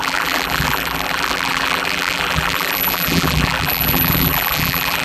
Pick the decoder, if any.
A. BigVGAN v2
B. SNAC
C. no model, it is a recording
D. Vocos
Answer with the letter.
A